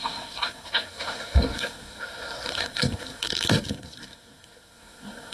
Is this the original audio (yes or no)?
no